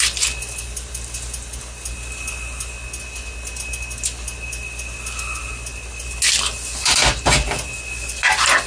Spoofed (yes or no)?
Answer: no